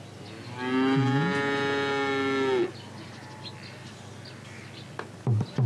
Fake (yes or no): no